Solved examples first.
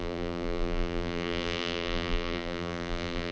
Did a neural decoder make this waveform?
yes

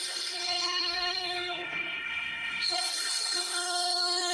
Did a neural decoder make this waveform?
yes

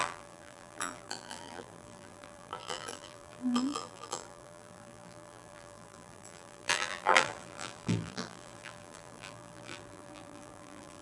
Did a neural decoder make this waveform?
yes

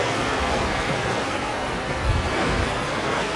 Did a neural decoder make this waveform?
yes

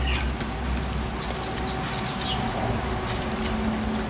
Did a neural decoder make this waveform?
no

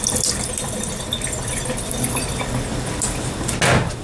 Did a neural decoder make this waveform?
no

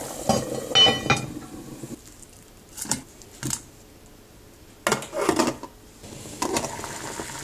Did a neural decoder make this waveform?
no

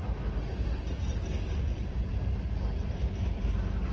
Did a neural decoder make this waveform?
no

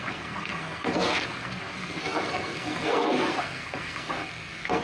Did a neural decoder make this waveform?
yes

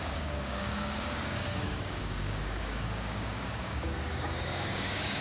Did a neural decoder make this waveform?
yes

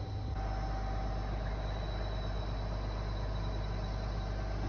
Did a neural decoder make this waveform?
no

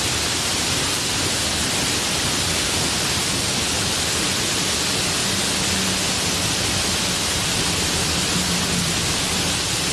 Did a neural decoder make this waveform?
no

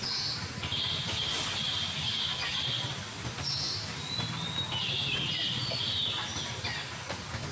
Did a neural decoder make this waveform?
no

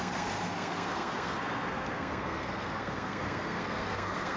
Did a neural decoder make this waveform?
yes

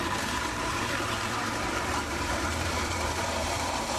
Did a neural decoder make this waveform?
yes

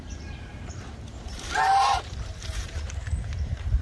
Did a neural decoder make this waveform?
yes